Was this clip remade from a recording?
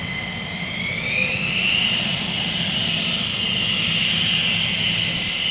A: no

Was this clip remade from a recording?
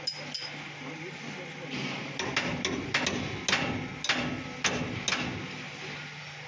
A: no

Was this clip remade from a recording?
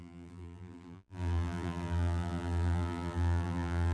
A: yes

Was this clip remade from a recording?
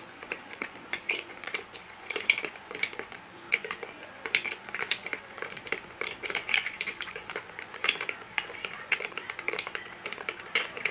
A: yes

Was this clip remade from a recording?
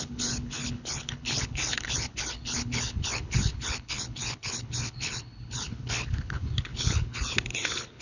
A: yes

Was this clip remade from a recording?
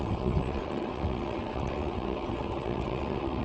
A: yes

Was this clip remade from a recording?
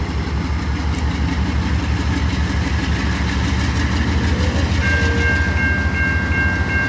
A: no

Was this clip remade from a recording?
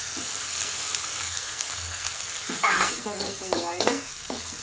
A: yes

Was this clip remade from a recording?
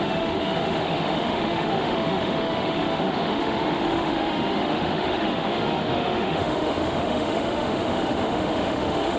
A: yes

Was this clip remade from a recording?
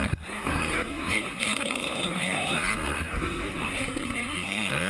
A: yes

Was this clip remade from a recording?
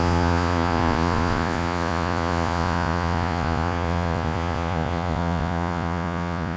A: yes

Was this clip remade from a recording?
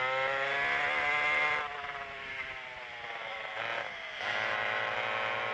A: no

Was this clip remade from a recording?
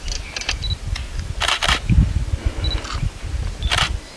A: no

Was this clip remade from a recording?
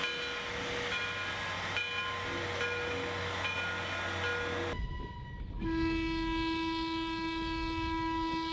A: no